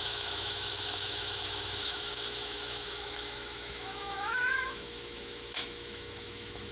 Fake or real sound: fake